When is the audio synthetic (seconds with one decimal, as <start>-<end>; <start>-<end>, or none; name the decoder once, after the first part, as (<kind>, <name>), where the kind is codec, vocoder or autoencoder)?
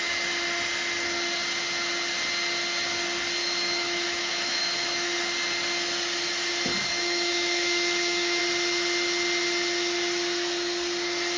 3.4-5.2 (autoencoder, DAC-VAE); 6.8-8.4